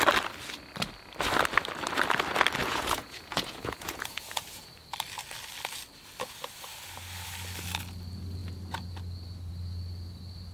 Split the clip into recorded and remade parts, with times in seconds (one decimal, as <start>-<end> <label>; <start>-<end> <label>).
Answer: 0.0-2.6 recorded; 2.6-4.7 remade; 4.7-10.5 recorded

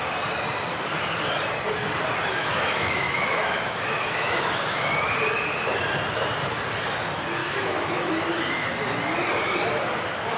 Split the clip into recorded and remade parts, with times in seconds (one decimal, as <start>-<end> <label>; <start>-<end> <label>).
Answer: 0.0-2.4 recorded; 2.4-5.1 remade; 5.1-7.4 recorded; 7.4-8.0 remade; 8.0-10.4 recorded

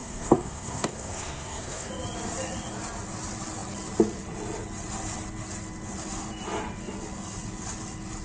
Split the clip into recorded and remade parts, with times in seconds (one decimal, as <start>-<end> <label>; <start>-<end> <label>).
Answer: 0.0-1.9 remade; 1.9-8.2 recorded

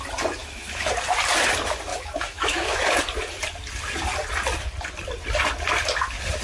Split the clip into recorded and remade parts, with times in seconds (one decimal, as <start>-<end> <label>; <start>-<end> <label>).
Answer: 0.0-0.4 recorded; 0.4-0.9 remade; 0.9-1.9 recorded; 1.9-2.9 remade; 2.9-6.4 recorded

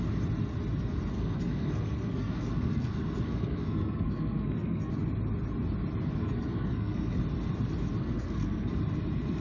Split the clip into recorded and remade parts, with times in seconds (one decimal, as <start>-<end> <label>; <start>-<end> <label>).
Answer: 0.0-1.1 recorded; 1.1-4.9 remade; 4.9-6.2 recorded; 6.2-7.2 remade; 7.2-8.0 recorded; 8.0-8.7 remade; 8.7-9.4 recorded

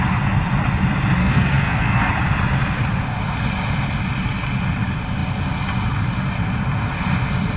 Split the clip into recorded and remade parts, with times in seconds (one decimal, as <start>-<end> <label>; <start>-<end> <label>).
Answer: 0.0-1.2 recorded; 1.2-2.1 remade; 2.1-7.6 recorded